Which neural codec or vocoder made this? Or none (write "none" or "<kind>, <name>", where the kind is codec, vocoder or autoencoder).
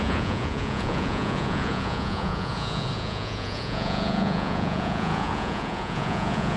vocoder, Vocos